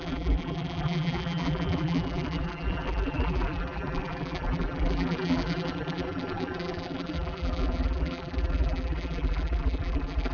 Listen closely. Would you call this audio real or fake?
fake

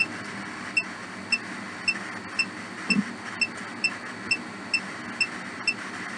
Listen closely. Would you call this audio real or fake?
real